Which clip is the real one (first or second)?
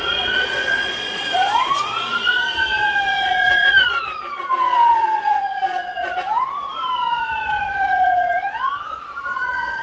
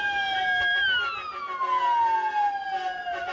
second